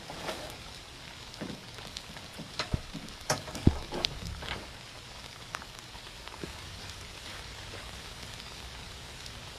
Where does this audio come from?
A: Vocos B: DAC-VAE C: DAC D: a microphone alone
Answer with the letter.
C